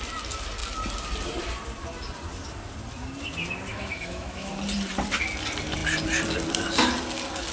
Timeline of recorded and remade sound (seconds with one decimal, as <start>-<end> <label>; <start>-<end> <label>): 0.0-3.7 recorded; 3.7-4.5 remade; 4.5-7.5 recorded